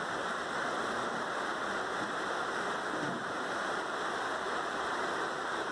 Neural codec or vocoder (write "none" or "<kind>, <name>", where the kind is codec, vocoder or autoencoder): none